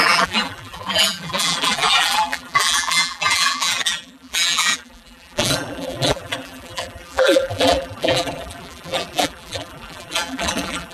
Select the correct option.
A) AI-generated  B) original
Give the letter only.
A